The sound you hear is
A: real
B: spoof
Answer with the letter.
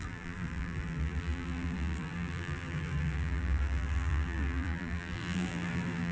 B